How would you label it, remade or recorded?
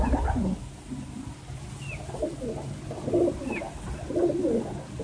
recorded